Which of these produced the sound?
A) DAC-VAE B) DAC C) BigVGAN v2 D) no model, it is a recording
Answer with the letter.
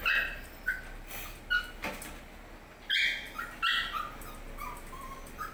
D